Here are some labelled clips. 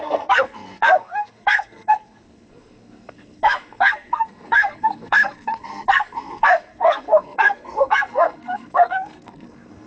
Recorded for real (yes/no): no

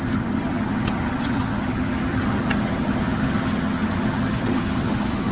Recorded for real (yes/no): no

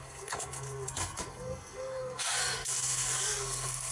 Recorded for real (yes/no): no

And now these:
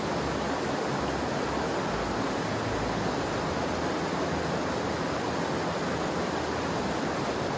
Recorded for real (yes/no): yes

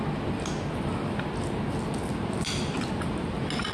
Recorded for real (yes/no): yes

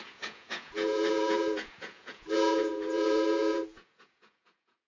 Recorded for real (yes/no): no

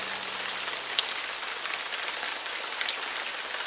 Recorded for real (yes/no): yes